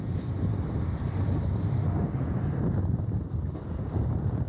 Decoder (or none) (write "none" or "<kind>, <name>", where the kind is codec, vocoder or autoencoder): none